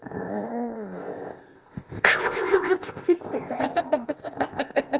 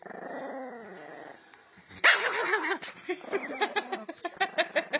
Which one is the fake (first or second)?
first